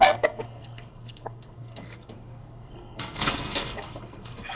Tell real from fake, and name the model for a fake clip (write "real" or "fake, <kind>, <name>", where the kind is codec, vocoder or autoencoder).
fake, codec, SNAC